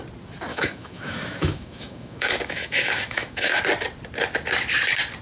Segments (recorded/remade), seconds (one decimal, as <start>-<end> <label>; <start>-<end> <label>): 0.0-0.5 recorded; 0.5-3.6 remade; 3.6-5.2 recorded